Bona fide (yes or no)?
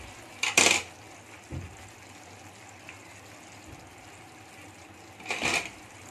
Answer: yes